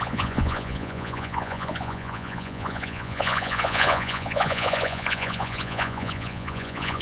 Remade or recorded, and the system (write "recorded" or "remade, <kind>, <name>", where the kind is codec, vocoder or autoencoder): remade, vocoder, Vocos